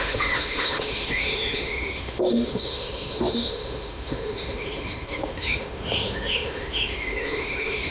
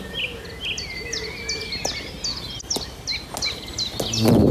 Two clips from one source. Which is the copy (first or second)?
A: first